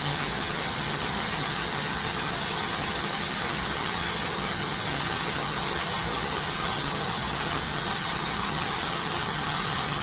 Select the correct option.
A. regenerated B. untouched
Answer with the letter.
A